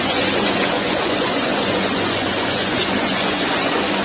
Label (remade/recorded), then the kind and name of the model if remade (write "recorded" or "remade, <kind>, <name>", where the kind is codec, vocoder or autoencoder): remade, vocoder, Vocos